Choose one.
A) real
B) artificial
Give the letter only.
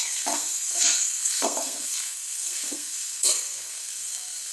B